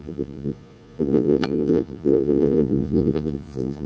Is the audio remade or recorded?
remade